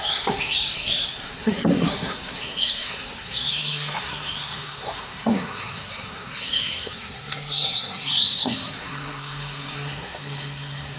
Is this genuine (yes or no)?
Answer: no